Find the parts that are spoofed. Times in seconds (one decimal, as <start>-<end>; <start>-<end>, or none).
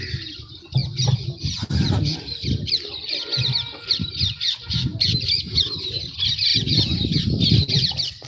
0.0-0.8; 3.9-6.5; 7.1-8.3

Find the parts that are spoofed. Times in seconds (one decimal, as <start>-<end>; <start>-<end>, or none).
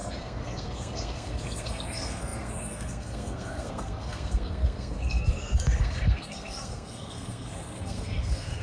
0.0-8.6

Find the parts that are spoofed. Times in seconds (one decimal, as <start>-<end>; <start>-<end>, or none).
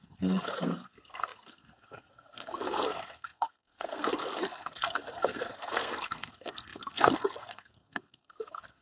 0.0-8.8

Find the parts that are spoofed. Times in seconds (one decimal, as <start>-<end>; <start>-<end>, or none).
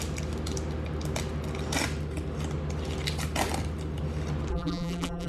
4.5-5.3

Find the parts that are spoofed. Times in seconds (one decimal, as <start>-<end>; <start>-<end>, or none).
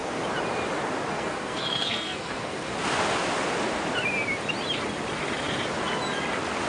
1.1-2.7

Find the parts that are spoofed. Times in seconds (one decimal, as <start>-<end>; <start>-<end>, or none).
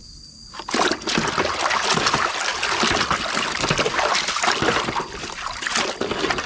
none